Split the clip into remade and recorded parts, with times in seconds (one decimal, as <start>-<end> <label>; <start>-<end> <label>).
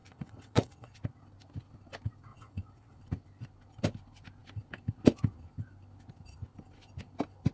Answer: 0.0-1.0 remade; 1.0-2.3 recorded; 2.3-3.0 remade; 3.0-7.5 recorded